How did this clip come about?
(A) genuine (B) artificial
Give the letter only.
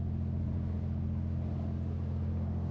A